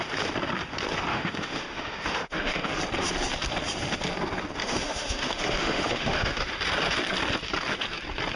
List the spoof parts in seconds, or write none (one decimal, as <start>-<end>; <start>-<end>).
1.1-2.7; 4.6-6.4